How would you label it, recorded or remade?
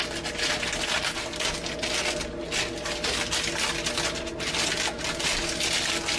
recorded